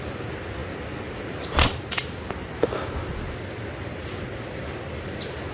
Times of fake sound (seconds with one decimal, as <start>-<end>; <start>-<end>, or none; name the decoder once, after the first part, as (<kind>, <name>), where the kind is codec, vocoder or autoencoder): none